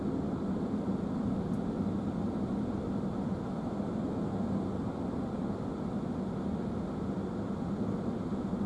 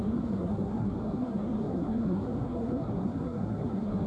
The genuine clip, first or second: first